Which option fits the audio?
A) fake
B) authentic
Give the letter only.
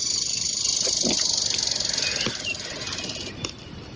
B